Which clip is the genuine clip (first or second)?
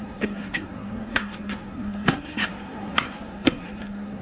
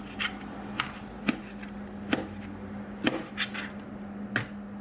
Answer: second